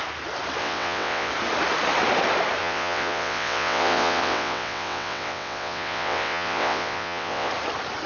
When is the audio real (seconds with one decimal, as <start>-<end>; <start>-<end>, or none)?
0.0-0.6; 1.3-2.6; 7.5-8.1